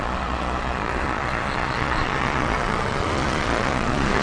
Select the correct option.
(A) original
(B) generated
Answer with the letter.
B